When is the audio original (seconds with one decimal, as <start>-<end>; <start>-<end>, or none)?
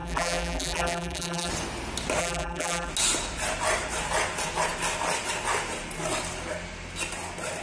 1.5-2.2; 2.9-7.6